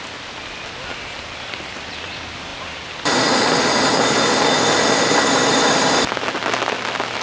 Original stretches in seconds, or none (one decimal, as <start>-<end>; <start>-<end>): 0.0-7.2